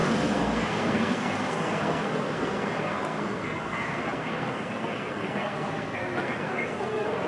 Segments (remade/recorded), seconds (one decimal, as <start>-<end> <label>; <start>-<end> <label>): 0.0-7.3 remade